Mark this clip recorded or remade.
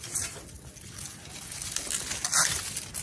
recorded